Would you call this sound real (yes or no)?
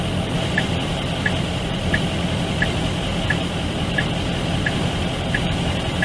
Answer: no